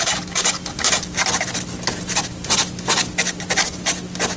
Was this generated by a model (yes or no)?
no